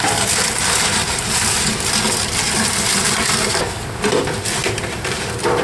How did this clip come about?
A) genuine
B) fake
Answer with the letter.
A